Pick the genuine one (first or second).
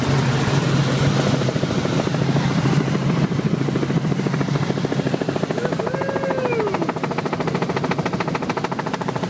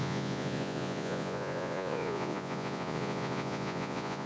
first